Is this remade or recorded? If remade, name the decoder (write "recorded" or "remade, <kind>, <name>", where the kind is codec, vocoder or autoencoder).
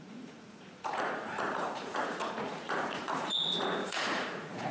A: remade, vocoder, Vocos